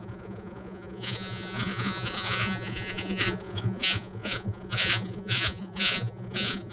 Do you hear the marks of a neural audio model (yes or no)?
yes